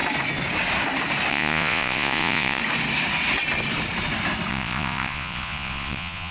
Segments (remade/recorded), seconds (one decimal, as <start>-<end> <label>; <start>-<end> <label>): 0.0-1.3 recorded; 1.3-2.6 remade; 2.6-4.5 recorded; 4.5-6.3 remade